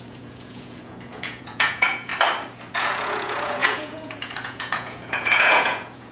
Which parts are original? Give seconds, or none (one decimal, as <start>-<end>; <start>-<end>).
2.1-2.7

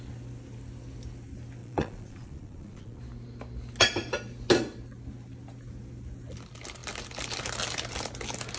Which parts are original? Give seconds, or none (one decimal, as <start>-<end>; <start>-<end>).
0.0-1.6; 3.0-8.6